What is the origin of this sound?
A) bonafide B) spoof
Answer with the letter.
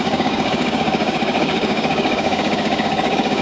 B